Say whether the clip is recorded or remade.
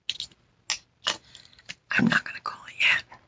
recorded